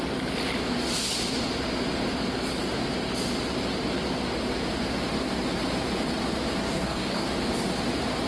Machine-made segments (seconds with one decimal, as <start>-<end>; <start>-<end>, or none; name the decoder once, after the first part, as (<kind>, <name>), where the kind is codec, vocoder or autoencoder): 6.6-7.3 (codec, DAC)

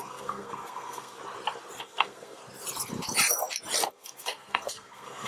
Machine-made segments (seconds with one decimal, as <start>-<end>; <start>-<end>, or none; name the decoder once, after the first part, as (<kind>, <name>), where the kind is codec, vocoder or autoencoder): 0.0-1.2 (codec, SNAC); 1.8-2.4; 3.9-5.3